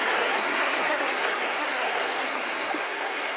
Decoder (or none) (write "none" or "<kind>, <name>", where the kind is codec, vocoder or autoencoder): codec, SNAC